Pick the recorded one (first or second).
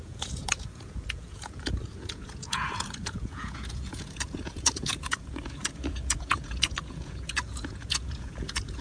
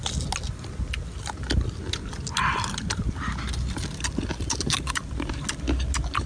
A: second